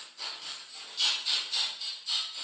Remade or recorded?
recorded